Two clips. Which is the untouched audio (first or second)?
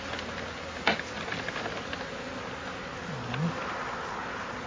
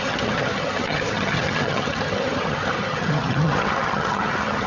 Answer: first